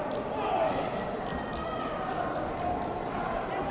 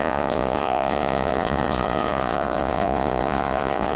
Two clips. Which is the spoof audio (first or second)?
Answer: second